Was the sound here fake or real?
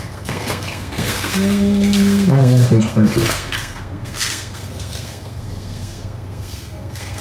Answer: fake